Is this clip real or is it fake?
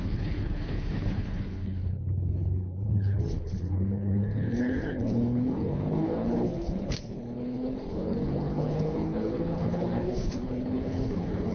fake